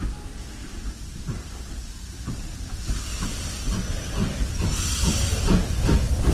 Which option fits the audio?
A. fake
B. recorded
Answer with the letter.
B